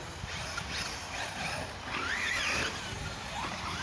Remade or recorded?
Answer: recorded